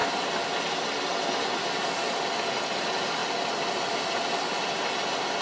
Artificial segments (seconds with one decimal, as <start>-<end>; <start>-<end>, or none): 3.2-4.4